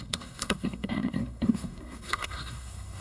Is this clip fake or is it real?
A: fake